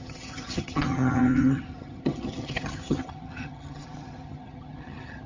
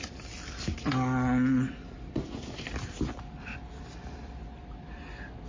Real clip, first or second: second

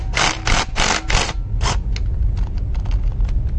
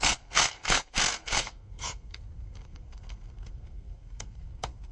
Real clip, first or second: first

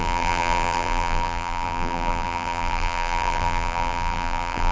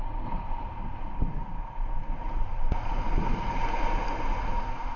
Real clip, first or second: second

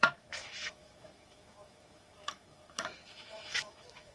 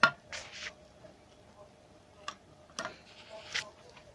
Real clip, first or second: second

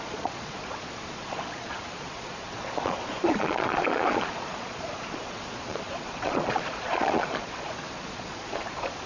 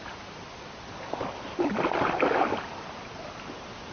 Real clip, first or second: second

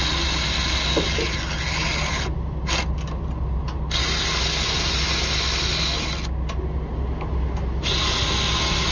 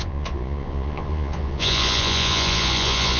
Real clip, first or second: first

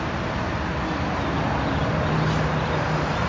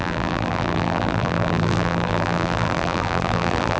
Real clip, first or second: first